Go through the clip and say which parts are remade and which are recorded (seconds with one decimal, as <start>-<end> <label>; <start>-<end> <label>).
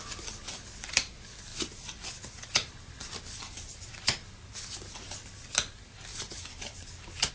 0.0-7.3 recorded